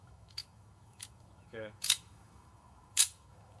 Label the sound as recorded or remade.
remade